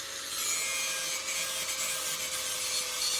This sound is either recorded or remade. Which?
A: recorded